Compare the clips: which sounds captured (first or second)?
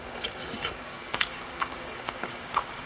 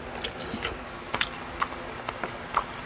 second